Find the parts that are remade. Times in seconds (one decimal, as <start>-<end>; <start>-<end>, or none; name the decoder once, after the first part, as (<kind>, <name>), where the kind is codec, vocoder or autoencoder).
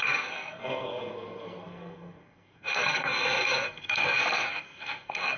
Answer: 0.0-5.4 (codec, SNAC)